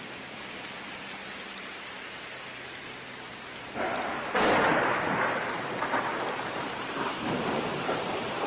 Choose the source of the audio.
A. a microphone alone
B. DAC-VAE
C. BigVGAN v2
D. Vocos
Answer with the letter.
C